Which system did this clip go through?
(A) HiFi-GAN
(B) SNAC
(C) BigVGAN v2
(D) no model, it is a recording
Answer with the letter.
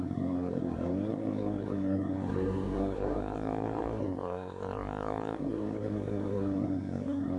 B